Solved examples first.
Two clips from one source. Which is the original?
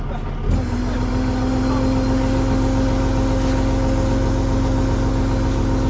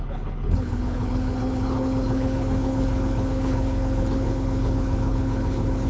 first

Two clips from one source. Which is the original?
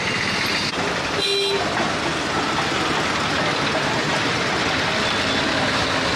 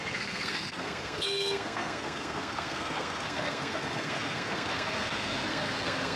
first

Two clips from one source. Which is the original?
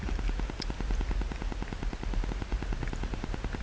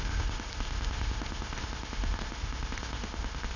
first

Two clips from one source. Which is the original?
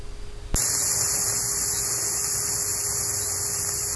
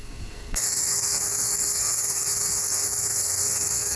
first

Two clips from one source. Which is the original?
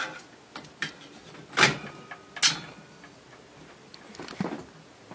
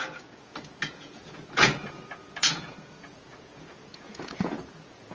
first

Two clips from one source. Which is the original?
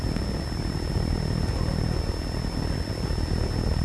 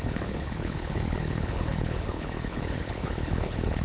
first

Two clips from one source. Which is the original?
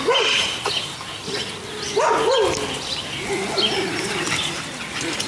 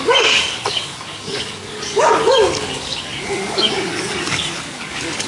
first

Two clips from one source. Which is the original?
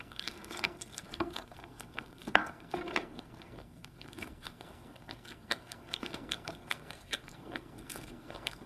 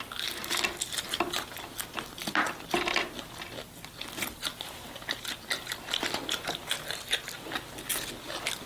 second